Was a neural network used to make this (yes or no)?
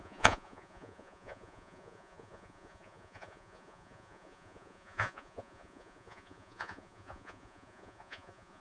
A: yes